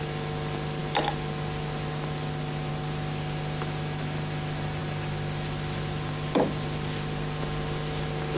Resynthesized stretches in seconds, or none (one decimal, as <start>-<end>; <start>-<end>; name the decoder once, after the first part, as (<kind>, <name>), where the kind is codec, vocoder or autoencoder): none